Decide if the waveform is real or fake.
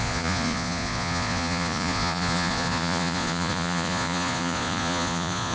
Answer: fake